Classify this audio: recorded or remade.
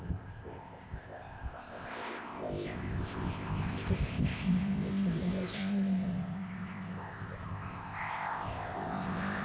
remade